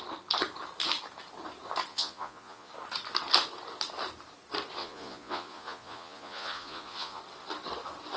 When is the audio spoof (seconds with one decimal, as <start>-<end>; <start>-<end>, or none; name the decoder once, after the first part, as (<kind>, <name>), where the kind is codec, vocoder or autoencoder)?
1.9-2.7 (vocoder, Vocos); 4.8-7.2